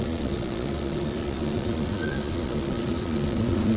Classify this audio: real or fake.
fake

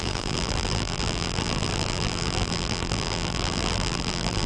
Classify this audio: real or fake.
fake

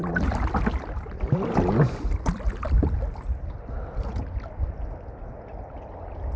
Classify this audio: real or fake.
real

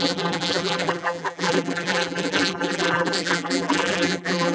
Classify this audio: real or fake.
fake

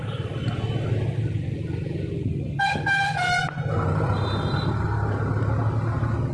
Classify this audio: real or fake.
real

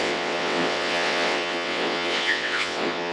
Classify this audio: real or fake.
fake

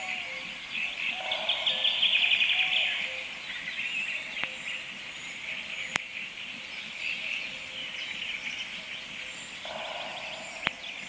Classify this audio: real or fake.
real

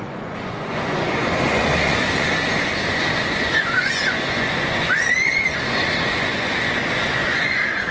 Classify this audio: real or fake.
fake